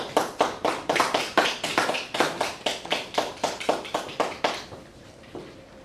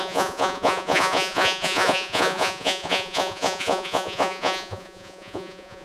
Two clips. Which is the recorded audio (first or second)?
first